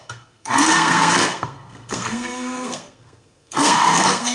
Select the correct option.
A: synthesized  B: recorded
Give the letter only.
A